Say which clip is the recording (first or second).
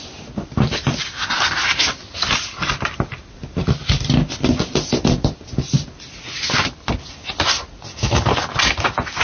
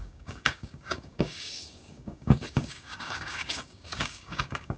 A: first